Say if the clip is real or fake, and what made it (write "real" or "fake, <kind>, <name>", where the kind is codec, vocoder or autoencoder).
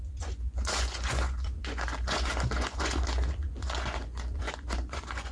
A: fake, vocoder, Vocos